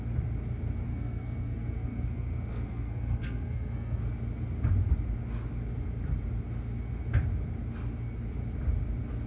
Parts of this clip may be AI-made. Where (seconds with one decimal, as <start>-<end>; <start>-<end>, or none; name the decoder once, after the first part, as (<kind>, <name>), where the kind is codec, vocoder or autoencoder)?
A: 0.9-4.0 (codec, SNAC)